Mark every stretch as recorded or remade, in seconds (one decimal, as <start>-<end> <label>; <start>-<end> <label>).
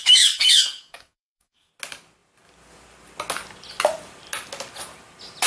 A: 0.0-1.7 remade; 1.7-5.5 recorded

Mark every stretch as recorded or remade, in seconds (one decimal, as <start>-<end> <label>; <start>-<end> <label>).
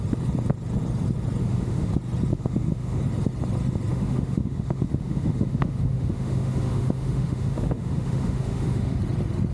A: 0.0-1.4 recorded; 1.4-1.9 remade; 1.9-2.3 recorded; 2.3-3.0 remade; 3.0-3.9 recorded; 3.9-9.0 remade; 9.0-9.5 recorded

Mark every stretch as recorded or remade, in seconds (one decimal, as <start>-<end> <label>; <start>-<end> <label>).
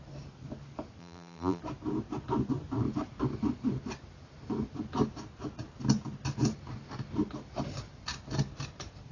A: 0.0-1.0 recorded; 1.0-1.6 remade; 1.6-9.1 recorded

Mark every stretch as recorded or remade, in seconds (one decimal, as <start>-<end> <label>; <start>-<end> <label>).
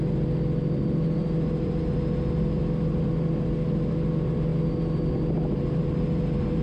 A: 0.0-6.6 recorded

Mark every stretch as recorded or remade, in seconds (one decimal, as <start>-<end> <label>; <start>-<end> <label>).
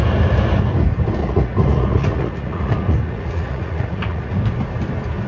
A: 0.0-1.2 recorded; 1.2-4.4 remade; 4.4-5.3 recorded